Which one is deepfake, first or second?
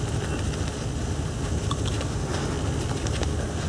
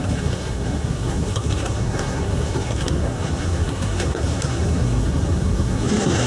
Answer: second